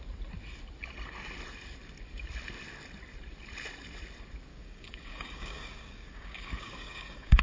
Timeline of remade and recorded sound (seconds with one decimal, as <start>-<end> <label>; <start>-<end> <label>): 0.0-4.5 recorded; 4.5-7.4 remade